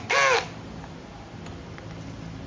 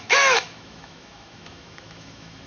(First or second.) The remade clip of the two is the second